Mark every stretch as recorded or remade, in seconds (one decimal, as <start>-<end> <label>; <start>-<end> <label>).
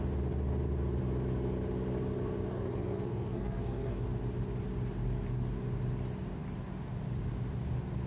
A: 0.0-2.5 recorded; 2.5-4.0 remade; 4.0-8.1 recorded